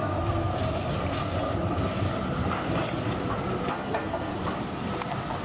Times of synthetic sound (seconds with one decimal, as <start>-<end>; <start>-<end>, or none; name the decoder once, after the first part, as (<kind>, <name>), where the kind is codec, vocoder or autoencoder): 0.0-0.5 (codec, SNAC); 3.7-4.3